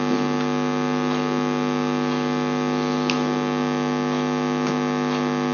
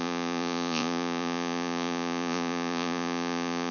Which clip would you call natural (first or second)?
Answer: first